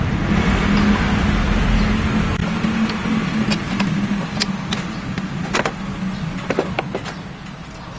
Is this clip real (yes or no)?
yes